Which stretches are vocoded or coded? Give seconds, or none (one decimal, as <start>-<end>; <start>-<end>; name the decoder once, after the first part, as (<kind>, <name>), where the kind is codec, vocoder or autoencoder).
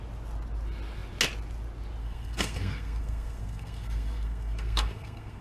2.0-5.4 (codec, SNAC)